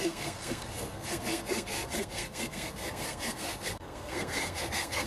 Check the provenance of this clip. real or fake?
fake